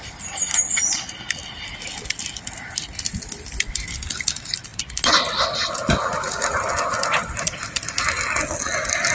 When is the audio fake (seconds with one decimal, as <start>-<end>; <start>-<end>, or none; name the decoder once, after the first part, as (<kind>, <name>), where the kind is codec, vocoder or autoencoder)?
none